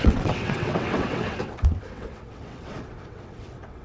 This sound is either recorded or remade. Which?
remade